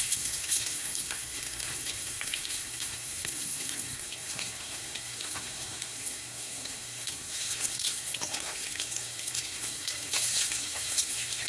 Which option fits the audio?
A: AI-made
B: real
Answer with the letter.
A